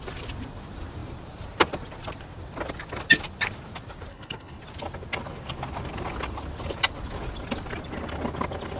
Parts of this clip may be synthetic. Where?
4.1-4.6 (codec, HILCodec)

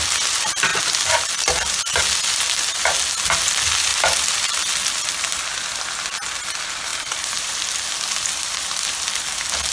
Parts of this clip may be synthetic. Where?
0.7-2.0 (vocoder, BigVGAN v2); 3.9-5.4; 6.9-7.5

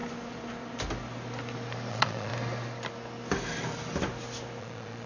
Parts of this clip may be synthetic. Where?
1.9-2.3 (vocoder, Vocos); 4.6-5.1